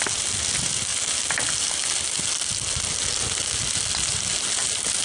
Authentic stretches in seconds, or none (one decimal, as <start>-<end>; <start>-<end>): 0.0-5.0